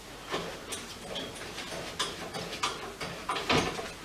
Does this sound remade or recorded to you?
recorded